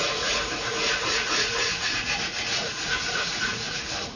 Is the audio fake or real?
fake